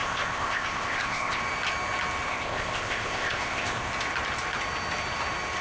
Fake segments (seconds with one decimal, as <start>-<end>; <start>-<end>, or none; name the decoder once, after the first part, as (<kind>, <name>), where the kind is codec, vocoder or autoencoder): 0.0-1.4 (codec, ZipCodec); 2.3-3.9